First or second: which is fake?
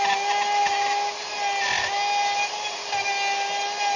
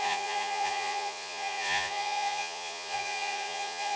second